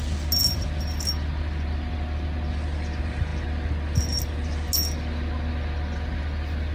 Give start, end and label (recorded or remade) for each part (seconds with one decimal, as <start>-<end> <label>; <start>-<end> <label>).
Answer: 0.0-6.7 recorded